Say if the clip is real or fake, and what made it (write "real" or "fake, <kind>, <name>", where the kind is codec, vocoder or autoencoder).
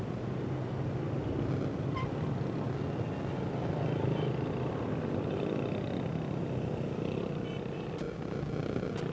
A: real